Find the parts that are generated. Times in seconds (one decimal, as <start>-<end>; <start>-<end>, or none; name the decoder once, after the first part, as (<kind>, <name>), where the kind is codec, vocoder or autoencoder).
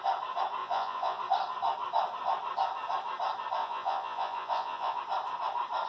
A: 0.6-1.2 (vocoder, Vocos); 3.6-5.0